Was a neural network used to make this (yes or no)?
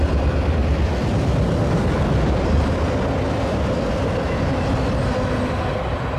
no